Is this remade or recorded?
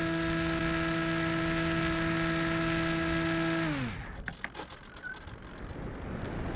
recorded